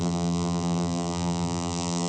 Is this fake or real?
fake